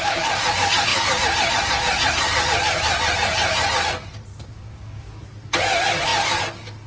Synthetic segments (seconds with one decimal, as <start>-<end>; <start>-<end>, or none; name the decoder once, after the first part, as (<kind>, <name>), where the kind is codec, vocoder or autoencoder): 4.3-5.2 (codec, DAC)